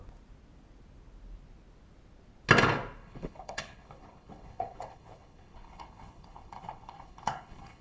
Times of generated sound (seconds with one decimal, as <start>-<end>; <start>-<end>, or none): 3.0-7.8